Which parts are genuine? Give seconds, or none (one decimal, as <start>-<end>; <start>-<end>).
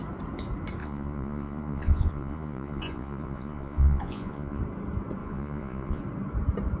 0.0-0.8; 4.6-5.2; 6.0-6.8